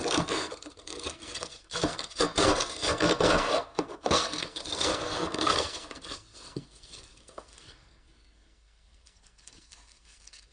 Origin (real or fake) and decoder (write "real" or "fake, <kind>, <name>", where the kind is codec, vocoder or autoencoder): fake, codec, SNAC